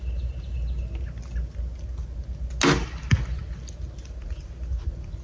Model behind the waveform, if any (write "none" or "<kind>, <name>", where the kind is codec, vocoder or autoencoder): none